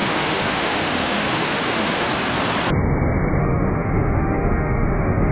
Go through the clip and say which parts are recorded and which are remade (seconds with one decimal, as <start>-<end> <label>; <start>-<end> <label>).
0.0-2.1 remade; 2.1-3.4 recorded; 3.4-5.3 remade